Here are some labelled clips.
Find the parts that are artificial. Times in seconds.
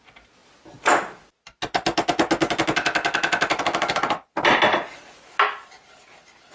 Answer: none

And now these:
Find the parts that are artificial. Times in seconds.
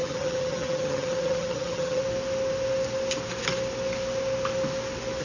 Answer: 0.0-2.0 (vocoder, HiFi-GAN)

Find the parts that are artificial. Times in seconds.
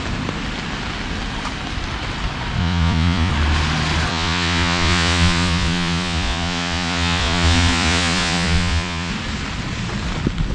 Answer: 2.6-3.3 (vocoder, Vocos); 4.1-9.1